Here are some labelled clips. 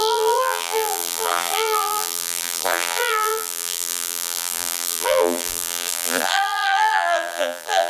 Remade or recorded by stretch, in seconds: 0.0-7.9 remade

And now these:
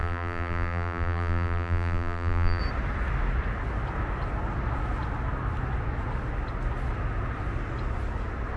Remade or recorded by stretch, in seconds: 0.0-2.6 remade; 2.6-8.6 recorded

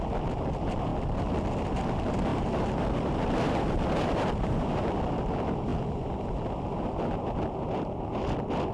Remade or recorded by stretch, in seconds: 0.0-2.3 recorded; 2.3-5.0 remade; 5.0-8.7 recorded

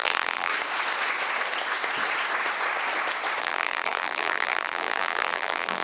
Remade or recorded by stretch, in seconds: 0.0-0.5 remade; 0.5-3.4 recorded; 3.4-5.8 remade

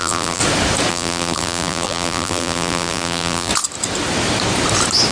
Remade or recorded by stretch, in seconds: 0.0-0.4 remade; 0.4-0.9 recorded; 0.9-3.5 remade; 3.5-5.1 recorded